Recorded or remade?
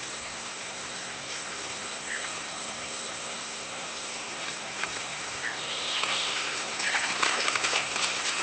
remade